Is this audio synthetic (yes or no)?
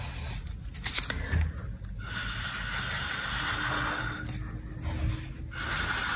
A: no